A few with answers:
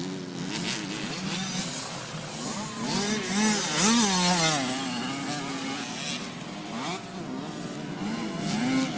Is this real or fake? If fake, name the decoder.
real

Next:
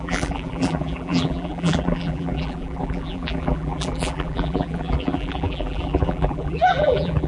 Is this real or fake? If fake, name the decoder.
fake, vocoder, BigVGAN v2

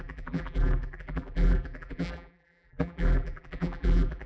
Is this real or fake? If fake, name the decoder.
fake, vocoder, BigVGAN v2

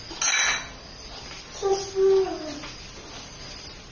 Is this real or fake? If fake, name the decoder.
real